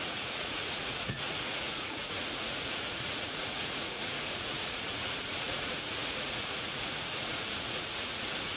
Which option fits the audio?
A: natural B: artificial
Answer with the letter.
B